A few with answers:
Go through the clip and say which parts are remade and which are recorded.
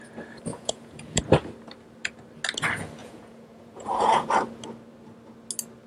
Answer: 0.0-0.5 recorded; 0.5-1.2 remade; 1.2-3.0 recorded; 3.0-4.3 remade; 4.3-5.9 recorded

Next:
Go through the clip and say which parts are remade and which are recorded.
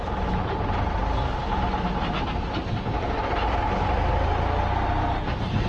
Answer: 0.0-5.7 recorded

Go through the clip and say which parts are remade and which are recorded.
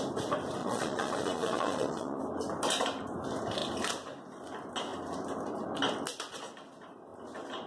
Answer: 0.0-0.6 recorded; 0.6-2.2 remade; 2.2-7.7 recorded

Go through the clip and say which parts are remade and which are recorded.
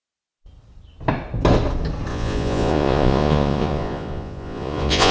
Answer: 0.0-2.1 recorded; 2.1-5.1 remade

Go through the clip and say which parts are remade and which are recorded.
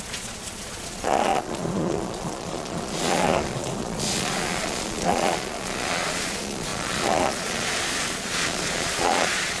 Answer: 0.0-9.6 remade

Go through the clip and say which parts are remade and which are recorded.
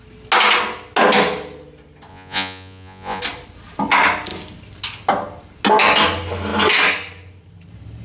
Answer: 0.0-2.1 recorded; 2.1-3.2 remade; 3.2-8.0 recorded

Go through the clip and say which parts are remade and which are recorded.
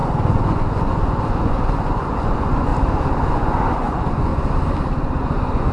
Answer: 0.0-2.7 remade; 2.7-3.3 recorded; 3.3-4.3 remade; 4.3-5.2 recorded; 5.2-5.7 remade